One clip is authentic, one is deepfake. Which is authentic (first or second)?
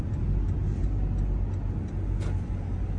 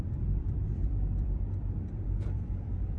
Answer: first